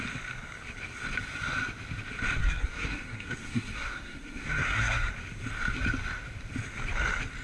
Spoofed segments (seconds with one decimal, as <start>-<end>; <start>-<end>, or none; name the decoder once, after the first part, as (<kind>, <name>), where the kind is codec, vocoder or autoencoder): 2.4-5.1 (codec, SNAC)